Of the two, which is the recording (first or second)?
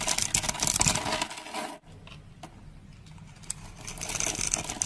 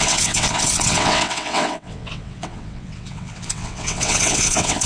first